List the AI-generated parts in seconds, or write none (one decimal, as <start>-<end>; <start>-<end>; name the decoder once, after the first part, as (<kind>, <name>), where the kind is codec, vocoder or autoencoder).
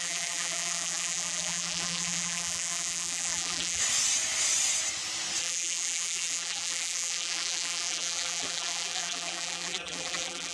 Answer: 0.0-3.8 (vocoder, BigVGAN v2); 5.4-10.5